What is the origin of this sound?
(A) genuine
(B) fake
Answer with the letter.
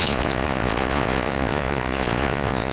B